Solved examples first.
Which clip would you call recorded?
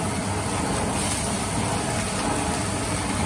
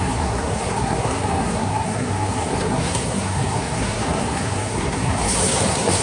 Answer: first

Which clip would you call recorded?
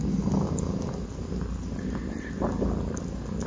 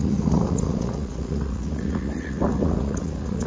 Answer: first